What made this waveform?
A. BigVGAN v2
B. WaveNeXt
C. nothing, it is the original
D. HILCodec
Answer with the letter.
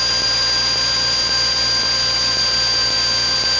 C